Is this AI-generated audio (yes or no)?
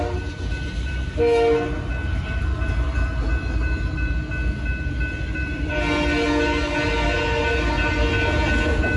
no